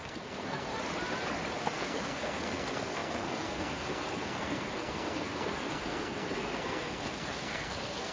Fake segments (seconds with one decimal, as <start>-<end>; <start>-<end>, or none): 0.0-0.7; 1.6-8.1